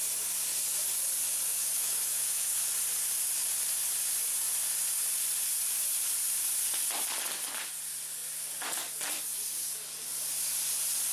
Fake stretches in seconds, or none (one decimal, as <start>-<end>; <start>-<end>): 1.5-2.6